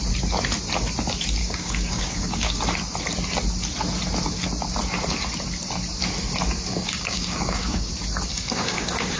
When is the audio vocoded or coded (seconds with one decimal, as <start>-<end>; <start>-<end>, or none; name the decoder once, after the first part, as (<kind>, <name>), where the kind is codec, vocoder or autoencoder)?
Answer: 1.4-2.6 (codec, DAC); 6.7-7.9; 8.3-9.2